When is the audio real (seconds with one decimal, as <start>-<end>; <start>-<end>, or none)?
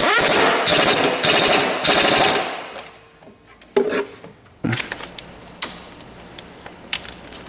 0.0-4.3; 4.8-7.5